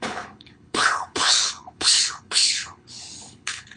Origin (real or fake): fake